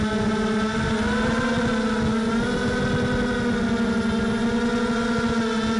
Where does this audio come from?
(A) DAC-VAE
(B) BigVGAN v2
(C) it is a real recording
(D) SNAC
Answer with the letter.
C